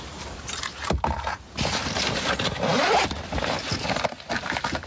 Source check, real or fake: real